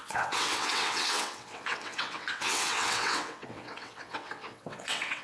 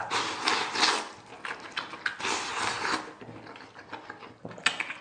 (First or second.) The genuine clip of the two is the second